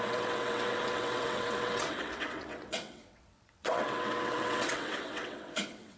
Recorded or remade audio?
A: remade